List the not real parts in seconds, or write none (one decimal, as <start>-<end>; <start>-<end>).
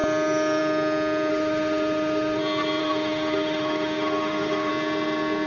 1.3-2.4; 2.8-4.7